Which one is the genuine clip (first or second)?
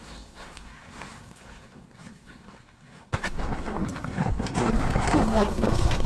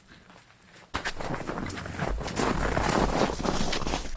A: second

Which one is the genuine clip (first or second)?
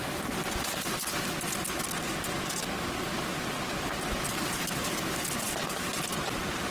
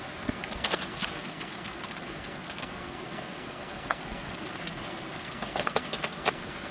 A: first